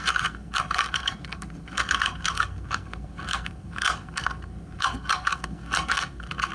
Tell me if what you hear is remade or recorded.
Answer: remade